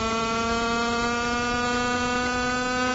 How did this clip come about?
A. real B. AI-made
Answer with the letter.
A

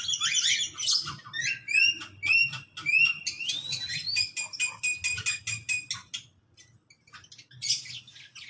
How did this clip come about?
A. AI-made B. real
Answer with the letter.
B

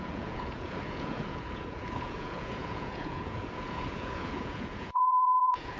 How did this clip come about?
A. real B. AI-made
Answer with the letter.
B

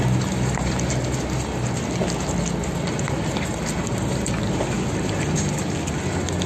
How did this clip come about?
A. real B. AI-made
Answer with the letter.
A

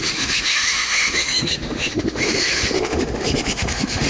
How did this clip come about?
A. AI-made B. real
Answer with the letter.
A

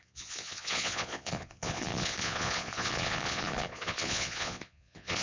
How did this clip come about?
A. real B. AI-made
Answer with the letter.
B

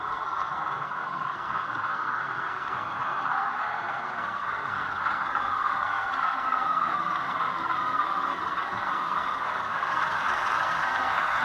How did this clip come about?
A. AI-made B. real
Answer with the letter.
A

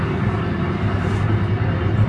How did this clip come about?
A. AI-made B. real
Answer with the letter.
B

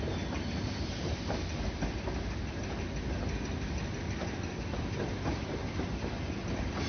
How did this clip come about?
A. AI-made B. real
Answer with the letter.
B